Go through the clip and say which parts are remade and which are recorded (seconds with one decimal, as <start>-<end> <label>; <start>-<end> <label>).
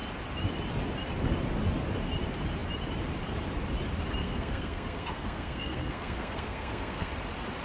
0.0-4.2 recorded; 4.2-7.1 remade; 7.1-7.6 recorded